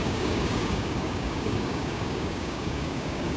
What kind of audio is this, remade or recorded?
remade